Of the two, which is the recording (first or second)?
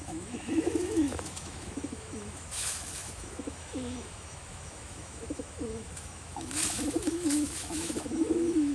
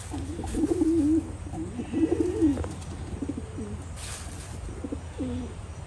second